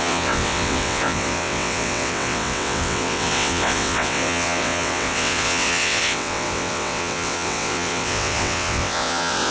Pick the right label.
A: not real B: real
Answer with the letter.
A